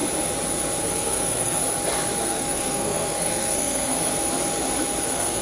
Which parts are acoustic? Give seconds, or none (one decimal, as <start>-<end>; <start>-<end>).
0.0-0.8; 1.6-2.2; 4.1-5.0